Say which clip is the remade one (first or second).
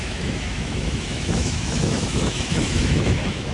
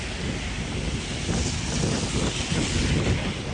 first